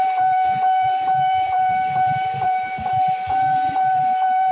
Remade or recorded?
remade